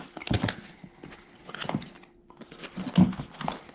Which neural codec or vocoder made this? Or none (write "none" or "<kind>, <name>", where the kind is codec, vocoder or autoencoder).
none